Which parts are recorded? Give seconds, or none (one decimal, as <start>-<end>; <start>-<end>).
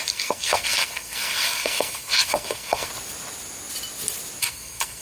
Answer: 2.9-4.4